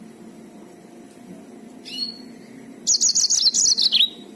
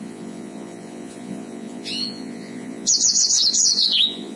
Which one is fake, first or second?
second